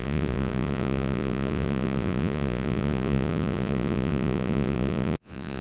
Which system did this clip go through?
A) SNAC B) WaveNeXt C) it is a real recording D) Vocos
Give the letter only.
D